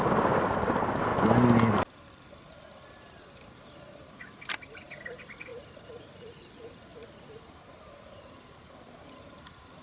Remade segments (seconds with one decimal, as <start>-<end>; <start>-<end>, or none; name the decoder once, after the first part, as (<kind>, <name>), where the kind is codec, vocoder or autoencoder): 0.0-1.1 (vocoder, BigVGAN v2); 3.8-6.9; 8.8-9.8